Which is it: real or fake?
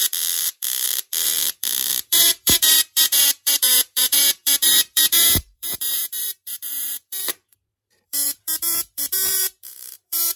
fake